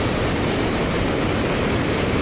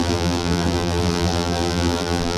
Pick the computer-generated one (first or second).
second